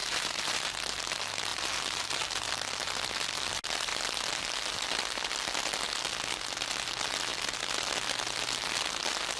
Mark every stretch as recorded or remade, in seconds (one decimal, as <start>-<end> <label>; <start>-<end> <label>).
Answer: 0.0-0.7 remade; 0.7-1.5 recorded; 1.5-2.5 remade; 2.5-9.4 recorded